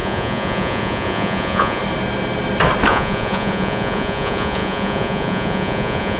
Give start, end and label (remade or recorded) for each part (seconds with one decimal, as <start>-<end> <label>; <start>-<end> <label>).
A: 0.0-1.8 remade; 1.8-2.9 recorded; 2.9-6.2 remade